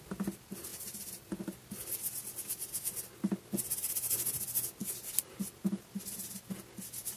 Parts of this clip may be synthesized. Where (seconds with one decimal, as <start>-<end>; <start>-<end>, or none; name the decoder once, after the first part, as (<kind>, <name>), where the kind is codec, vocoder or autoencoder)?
0.7-1.3 (vocoder, BigVGAN v2)